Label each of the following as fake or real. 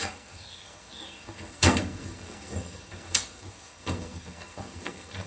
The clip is fake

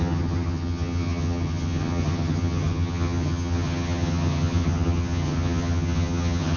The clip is fake